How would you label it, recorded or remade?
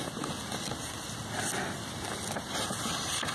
recorded